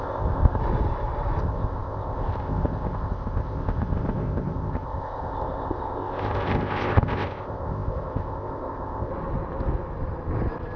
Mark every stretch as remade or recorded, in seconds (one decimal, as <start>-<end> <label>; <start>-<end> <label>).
0.0-0.6 remade; 0.6-1.4 recorded; 1.4-9.1 remade; 9.1-10.8 recorded